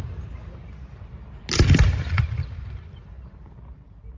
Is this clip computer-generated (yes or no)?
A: no